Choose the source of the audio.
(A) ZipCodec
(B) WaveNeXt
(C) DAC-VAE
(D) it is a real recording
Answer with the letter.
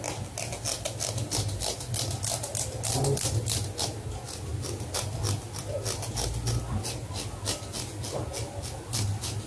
D